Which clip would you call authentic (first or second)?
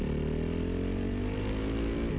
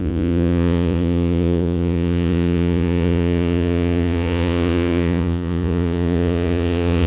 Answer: first